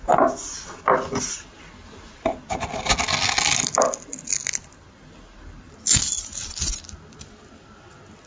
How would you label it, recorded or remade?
recorded